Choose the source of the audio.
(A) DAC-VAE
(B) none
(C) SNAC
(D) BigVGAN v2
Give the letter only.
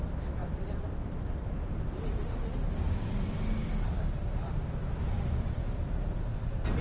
B